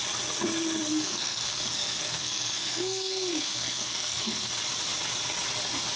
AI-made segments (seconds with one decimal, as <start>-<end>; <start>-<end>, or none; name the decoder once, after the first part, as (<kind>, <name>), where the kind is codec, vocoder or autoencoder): 0.9-4.5 (codec, SNAC)